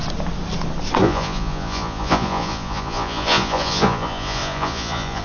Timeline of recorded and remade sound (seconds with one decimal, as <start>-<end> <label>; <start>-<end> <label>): 0.0-1.0 recorded; 1.0-5.2 remade